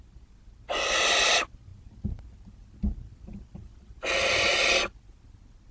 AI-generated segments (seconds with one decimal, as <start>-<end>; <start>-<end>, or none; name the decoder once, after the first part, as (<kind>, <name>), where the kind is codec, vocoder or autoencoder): none